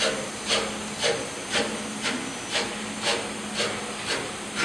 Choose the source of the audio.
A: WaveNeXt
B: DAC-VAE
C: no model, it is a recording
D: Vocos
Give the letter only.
C